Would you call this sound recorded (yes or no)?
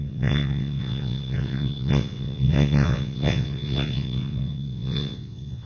no